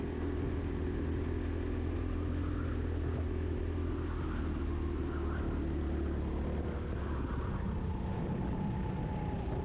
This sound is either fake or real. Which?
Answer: real